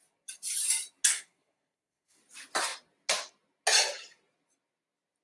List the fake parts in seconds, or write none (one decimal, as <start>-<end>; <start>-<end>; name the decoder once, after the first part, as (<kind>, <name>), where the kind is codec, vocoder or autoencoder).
1.1-2.2 (codec, SNAC)